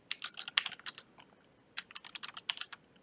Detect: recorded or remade recorded